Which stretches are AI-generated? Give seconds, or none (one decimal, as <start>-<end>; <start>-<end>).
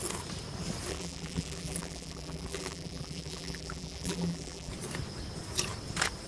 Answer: 0.9-4.7